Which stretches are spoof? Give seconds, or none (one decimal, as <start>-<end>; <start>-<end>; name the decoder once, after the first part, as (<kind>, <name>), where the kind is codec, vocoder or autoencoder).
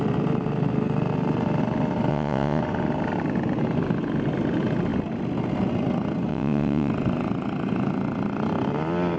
2.1-2.6 (vocoder, WaveNeXt); 6.3-6.9